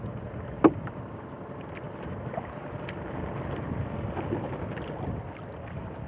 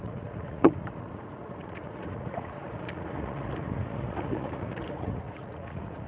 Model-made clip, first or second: second